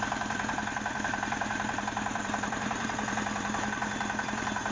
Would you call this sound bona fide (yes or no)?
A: no